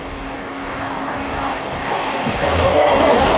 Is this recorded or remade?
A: remade